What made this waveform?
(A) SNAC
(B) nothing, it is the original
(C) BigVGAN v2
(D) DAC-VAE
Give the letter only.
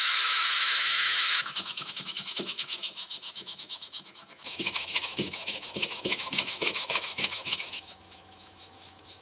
D